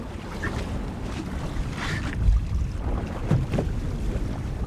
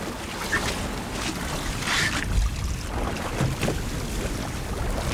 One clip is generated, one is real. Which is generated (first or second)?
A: first